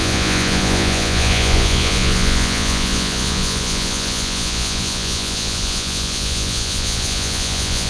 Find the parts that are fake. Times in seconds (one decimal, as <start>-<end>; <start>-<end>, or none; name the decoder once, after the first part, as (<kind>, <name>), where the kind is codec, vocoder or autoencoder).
0.0-7.9 (vocoder, Vocos)